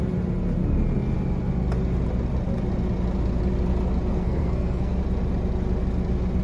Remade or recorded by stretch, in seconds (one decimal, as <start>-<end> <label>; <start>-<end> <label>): 0.0-4.1 recorded; 4.1-5.0 remade; 5.0-6.4 recorded